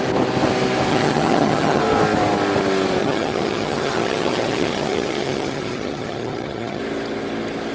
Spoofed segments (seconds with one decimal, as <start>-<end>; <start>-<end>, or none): 0.9-1.8; 3.0-6.8